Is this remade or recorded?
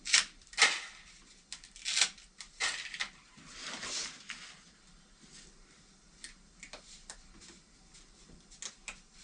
recorded